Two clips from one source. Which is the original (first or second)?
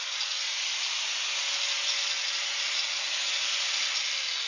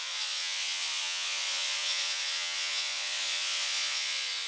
first